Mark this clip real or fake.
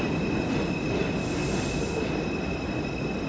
real